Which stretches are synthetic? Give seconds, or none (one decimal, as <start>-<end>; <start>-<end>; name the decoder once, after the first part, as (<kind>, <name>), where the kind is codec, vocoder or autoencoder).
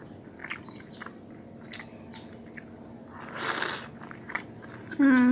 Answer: none